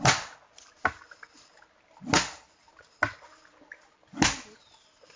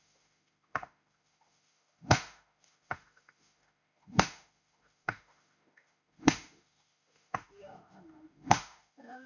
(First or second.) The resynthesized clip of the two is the second